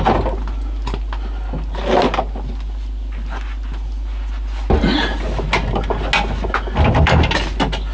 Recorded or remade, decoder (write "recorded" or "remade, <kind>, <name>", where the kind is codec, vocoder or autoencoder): recorded